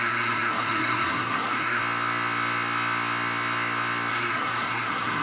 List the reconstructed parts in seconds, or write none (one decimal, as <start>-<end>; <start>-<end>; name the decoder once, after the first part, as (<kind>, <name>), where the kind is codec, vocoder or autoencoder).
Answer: 0.0-1.8 (codec, SNAC); 4.1-5.2